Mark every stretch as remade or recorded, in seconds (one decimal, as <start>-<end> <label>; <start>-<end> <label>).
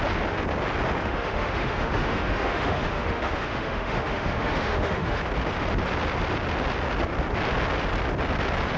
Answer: 0.0-1.0 recorded; 1.0-5.2 remade; 5.2-8.8 recorded